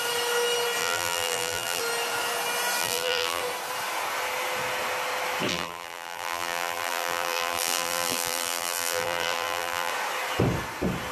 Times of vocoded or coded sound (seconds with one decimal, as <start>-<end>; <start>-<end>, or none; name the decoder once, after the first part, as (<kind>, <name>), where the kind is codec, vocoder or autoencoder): 0.8-1.8 (vocoder, BigVGAN v2); 2.8-3.4; 5.5-9.9